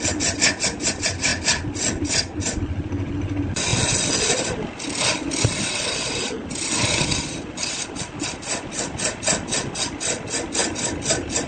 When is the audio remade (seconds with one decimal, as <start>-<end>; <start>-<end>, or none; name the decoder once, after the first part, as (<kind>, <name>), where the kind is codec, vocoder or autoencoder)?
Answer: none